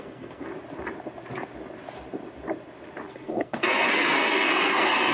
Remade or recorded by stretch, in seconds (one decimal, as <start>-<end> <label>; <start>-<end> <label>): 0.0-0.5 remade; 0.5-3.1 recorded; 3.1-5.1 remade